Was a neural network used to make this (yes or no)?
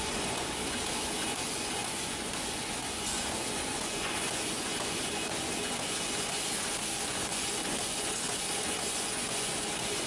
yes